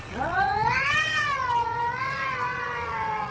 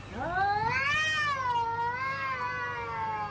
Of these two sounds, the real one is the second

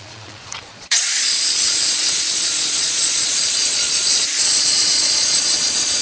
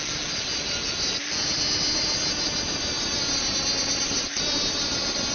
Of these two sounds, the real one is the second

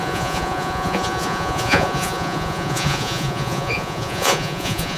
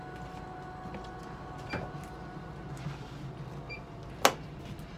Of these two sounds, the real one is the second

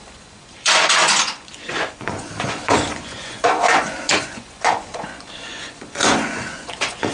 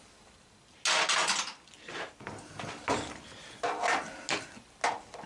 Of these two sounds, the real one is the second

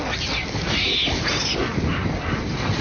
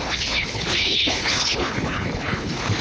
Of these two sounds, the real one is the first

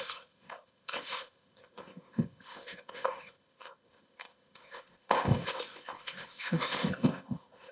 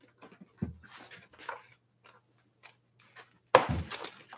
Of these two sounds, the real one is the second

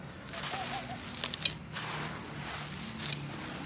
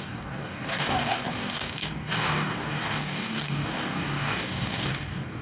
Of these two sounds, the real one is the first